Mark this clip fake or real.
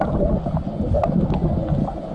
real